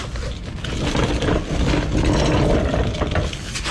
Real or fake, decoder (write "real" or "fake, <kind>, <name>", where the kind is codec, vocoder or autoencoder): real